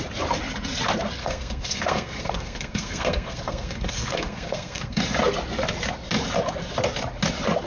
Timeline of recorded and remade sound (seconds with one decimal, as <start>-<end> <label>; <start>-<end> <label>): 0.0-1.2 recorded; 1.2-5.0 remade; 5.0-7.7 recorded